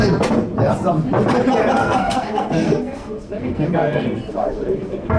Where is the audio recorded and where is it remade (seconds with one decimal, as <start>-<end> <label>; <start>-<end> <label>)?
0.0-1.8 recorded; 1.8-5.2 remade